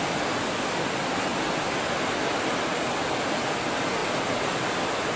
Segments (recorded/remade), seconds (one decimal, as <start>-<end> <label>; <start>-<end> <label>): 0.0-5.2 recorded